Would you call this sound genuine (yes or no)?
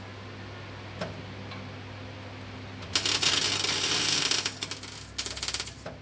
yes